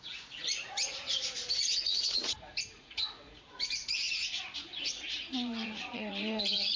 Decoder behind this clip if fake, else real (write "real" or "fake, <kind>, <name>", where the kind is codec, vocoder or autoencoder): fake, vocoder, Vocos